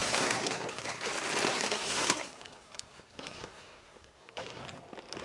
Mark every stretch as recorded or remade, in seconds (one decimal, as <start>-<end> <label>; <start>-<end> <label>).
0.0-1.1 remade; 1.1-1.5 recorded; 1.5-4.6 remade; 4.6-5.2 recorded